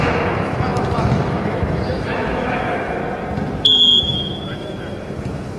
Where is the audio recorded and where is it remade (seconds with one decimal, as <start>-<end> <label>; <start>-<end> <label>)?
0.0-3.0 remade; 3.0-3.6 recorded; 3.6-5.6 remade